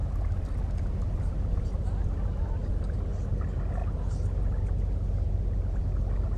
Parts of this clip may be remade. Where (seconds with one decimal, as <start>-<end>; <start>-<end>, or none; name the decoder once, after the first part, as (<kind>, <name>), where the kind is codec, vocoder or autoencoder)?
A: none